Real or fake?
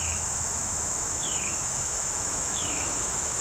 fake